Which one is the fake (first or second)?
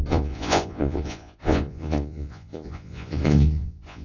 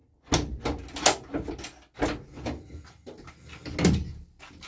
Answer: first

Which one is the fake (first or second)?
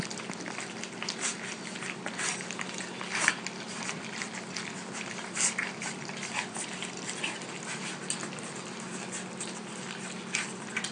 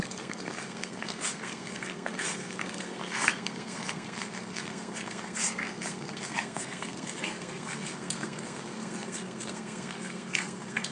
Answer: second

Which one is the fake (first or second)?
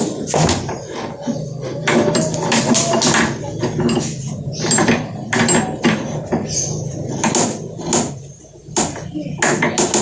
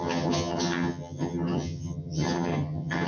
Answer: second